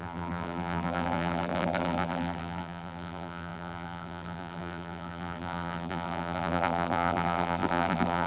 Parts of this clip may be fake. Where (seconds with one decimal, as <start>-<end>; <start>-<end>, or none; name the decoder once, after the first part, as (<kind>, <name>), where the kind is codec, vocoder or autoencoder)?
0.0-8.3 (vocoder, BigVGAN v2)